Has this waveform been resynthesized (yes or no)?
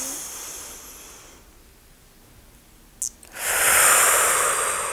no